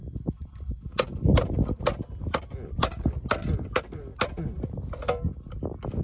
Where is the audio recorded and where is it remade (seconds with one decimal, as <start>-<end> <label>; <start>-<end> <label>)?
0.0-0.9 recorded; 0.9-1.9 remade; 1.9-6.0 recorded